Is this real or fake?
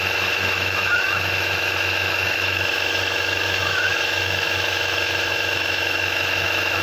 fake